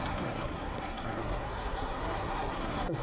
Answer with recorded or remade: remade